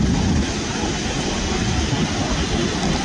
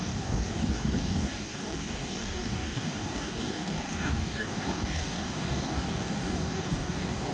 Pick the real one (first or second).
first